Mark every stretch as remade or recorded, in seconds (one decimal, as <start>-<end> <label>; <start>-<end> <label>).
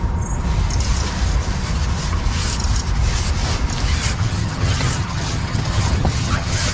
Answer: 0.0-4.0 recorded; 4.0-6.7 remade